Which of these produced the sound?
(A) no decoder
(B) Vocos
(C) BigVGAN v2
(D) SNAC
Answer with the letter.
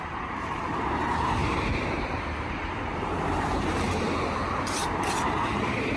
C